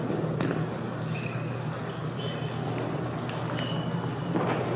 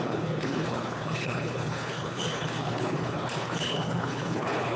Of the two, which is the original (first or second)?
first